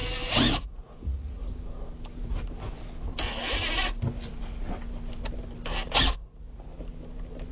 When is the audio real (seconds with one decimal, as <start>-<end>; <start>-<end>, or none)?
0.0-0.6; 1.4-5.9; 6.7-7.5